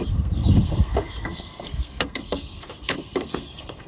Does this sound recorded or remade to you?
remade